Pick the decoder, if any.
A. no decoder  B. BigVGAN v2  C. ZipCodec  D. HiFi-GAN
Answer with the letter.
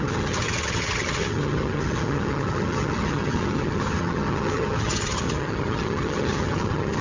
D